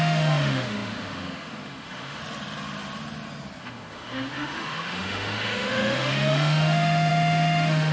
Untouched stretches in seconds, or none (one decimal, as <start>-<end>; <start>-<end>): 2.2-3.6